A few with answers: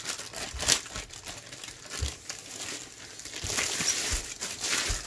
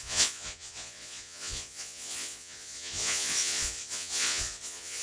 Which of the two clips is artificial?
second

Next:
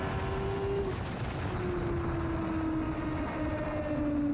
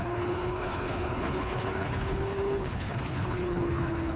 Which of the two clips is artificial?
second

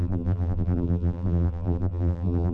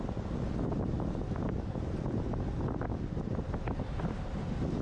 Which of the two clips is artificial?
first